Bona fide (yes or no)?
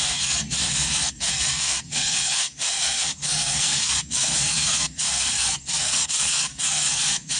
no